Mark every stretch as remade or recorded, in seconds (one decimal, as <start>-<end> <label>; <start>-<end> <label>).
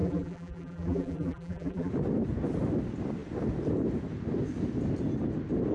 0.0-1.9 remade; 1.9-5.7 recorded